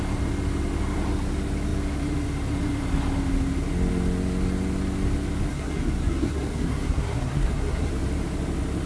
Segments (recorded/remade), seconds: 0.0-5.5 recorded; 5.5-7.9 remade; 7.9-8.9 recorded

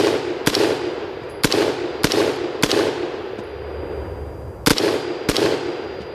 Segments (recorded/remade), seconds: 0.0-6.1 recorded

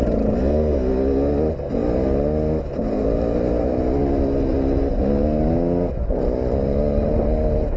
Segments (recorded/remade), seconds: 0.0-7.8 recorded